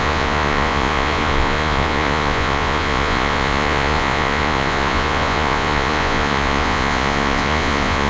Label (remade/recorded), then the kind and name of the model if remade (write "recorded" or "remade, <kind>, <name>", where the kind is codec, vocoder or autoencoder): remade, vocoder, Vocos